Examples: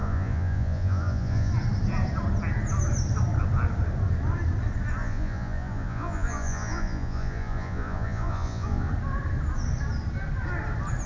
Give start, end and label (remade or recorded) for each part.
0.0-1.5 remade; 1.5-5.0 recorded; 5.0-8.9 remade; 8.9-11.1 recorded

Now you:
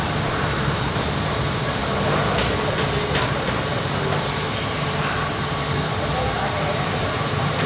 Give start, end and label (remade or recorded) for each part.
0.0-1.8 remade; 1.8-3.0 recorded; 3.0-3.7 remade; 3.7-5.0 recorded; 5.0-7.7 remade

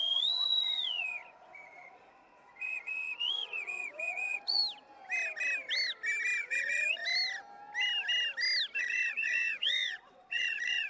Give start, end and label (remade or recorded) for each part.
0.0-4.6 remade; 4.6-6.4 recorded; 6.4-7.0 remade; 7.0-8.8 recorded; 8.8-10.9 remade

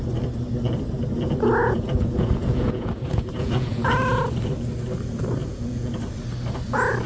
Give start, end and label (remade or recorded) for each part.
0.0-1.6 recorded; 1.6-3.9 remade; 3.9-5.4 recorded; 5.4-6.0 remade; 6.0-7.1 recorded

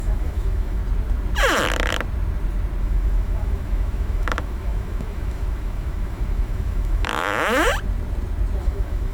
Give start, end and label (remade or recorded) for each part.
0.0-0.8 remade; 0.8-2.8 recorded; 2.8-7.7 remade; 7.7-8.6 recorded; 8.6-9.1 remade